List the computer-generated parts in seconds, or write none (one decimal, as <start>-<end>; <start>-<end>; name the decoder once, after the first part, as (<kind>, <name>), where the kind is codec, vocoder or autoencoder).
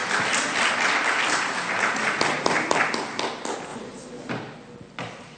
none